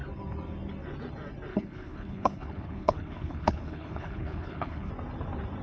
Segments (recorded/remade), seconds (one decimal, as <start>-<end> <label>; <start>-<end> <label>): 0.0-1.5 recorded; 1.5-4.9 remade; 4.9-5.6 recorded